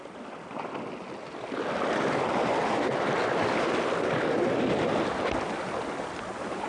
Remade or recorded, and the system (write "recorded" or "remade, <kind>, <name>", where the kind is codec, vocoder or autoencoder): recorded